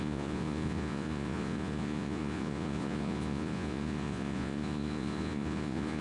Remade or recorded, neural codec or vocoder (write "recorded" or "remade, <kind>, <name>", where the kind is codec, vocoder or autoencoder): remade, vocoder, Vocos